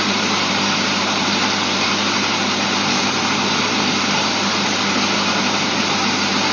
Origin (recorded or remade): remade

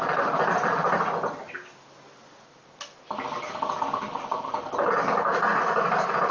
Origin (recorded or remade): recorded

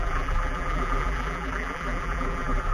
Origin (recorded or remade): remade